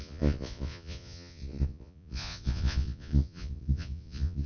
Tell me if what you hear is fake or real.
fake